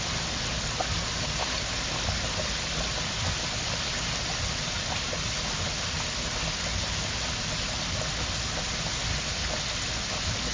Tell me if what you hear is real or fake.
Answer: real